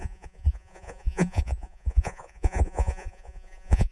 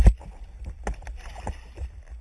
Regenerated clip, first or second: first